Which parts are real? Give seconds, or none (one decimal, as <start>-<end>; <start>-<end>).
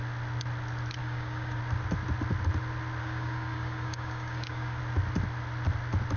0.0-1.0; 1.6-3.0; 4.8-6.2